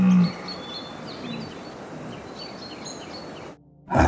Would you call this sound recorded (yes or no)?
yes